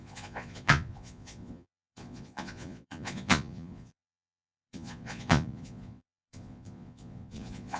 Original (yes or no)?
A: no